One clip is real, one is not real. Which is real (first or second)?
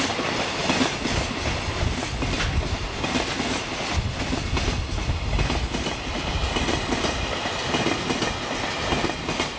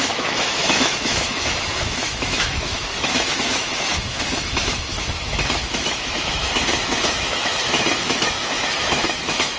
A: first